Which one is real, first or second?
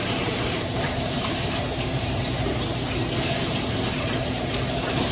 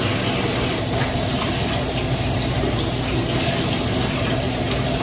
second